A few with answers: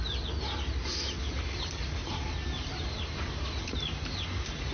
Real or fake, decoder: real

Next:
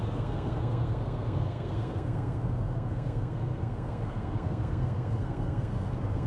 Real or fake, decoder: fake, codec, SNAC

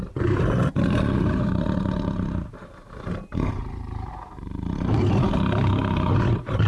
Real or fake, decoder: fake, vocoder, BigVGAN v2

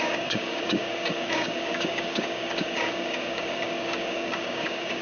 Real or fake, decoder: fake, codec, DAC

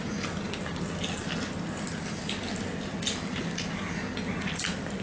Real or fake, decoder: real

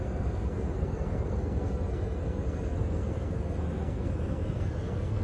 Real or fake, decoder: fake, codec, SNAC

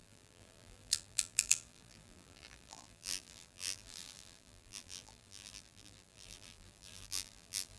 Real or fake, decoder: fake, vocoder, BigVGAN v2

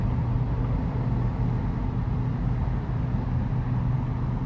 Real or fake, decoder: real